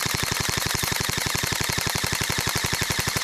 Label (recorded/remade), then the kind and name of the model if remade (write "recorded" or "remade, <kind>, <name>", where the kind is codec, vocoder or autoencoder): remade, vocoder, BigVGAN v2